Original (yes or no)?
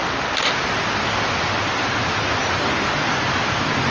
yes